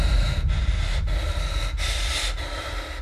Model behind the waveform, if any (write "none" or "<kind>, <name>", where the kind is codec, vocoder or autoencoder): none